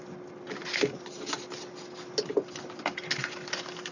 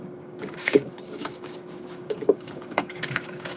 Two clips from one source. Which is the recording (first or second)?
first